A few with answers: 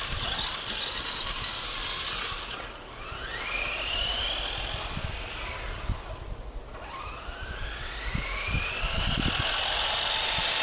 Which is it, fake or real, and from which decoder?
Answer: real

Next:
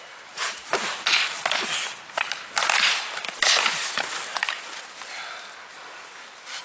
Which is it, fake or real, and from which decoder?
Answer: real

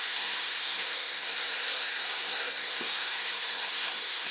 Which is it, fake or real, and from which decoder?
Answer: fake, codec, SNAC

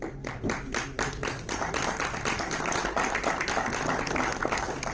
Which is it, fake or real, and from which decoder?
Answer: real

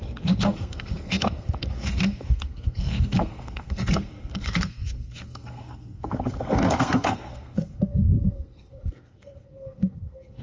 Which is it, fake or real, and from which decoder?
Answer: fake, codec, SNAC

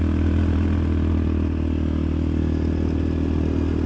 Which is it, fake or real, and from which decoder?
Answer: real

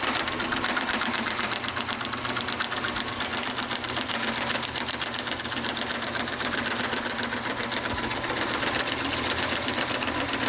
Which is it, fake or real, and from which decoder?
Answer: real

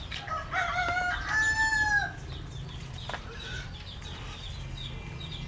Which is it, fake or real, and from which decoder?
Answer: real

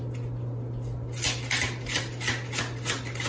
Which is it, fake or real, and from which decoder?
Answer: real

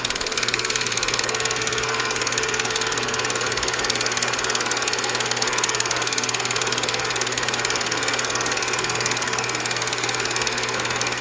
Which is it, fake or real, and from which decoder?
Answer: fake, codec, SNAC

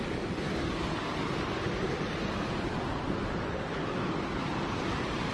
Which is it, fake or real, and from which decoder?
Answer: real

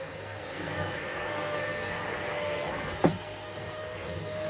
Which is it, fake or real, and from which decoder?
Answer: fake, codec, SNAC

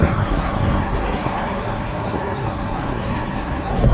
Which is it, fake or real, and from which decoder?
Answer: fake, codec, SNAC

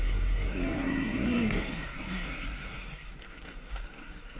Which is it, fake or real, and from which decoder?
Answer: fake, codec, SNAC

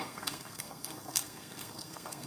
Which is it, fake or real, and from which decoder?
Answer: fake, codec, SNAC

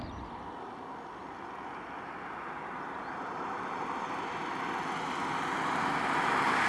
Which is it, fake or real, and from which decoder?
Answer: real